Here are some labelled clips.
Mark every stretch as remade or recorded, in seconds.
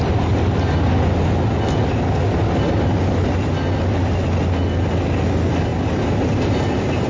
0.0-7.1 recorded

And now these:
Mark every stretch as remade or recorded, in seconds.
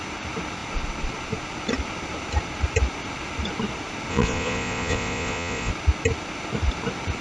0.0-4.1 recorded; 4.1-5.7 remade; 5.7-7.2 recorded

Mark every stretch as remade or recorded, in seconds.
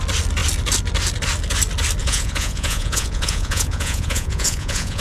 0.0-2.0 recorded; 2.0-5.0 remade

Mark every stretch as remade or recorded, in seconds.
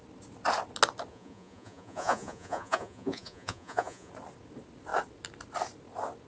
0.0-1.1 recorded; 1.1-4.1 remade; 4.1-6.3 recorded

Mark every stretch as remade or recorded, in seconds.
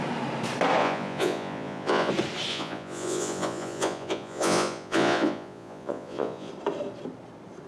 0.0-0.8 recorded; 0.8-2.1 remade; 2.1-2.5 recorded; 2.5-6.5 remade; 6.5-7.7 recorded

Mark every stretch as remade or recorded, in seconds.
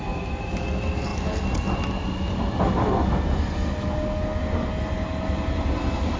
0.0-6.2 recorded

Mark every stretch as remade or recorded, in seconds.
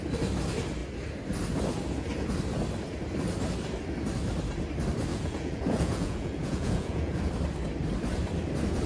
0.0-5.1 recorded; 5.1-7.3 remade; 7.3-8.9 recorded